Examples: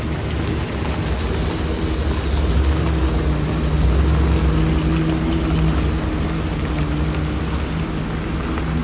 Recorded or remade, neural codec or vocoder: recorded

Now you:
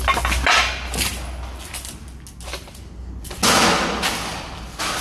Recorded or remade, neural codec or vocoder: recorded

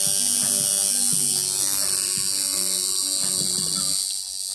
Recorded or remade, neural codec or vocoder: recorded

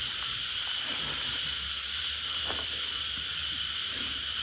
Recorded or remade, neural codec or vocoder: remade, vocoder, BigVGAN v2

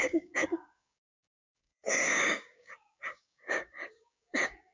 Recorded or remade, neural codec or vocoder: remade, codec, DAC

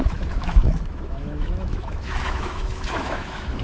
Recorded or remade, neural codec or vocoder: remade, autoencoder, DAC-VAE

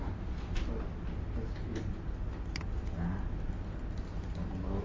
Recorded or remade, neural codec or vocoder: recorded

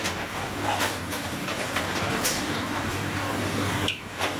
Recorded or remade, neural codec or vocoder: remade, codec, DAC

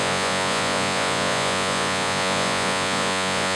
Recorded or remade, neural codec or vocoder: remade, vocoder, Vocos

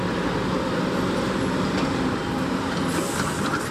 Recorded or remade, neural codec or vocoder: recorded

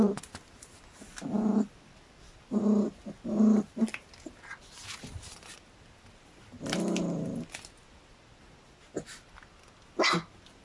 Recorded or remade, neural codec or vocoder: recorded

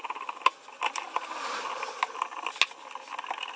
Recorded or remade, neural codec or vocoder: recorded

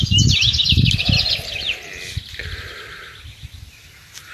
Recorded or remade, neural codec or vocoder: recorded